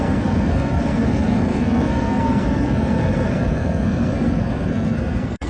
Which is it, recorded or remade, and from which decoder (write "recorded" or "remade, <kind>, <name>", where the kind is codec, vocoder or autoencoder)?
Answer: remade, codec, SNAC